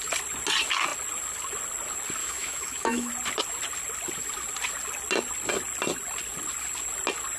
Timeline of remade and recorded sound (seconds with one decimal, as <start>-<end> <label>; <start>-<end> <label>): 0.0-2.2 recorded; 2.2-3.1 remade; 3.1-7.4 recorded